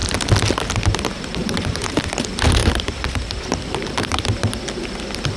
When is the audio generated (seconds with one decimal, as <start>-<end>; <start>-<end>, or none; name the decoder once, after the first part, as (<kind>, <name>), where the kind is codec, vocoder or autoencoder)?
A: 1.4-2.0 (vocoder, BigVGAN v2); 2.6-4.2